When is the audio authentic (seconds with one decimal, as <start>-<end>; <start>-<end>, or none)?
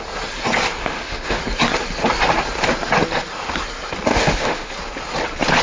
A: 0.0-0.8; 1.4-4.1; 4.7-5.6